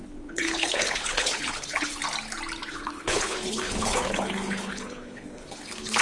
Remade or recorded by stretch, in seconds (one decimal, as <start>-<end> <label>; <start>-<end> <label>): 0.0-2.0 remade; 2.0-2.7 recorded; 2.7-6.0 remade